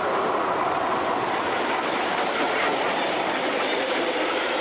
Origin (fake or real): real